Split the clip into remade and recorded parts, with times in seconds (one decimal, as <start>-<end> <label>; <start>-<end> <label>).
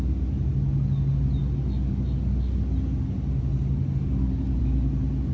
0.0-5.3 recorded